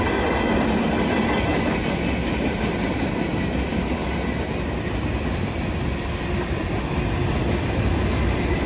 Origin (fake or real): real